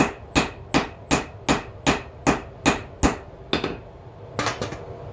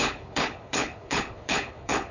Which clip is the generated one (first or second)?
second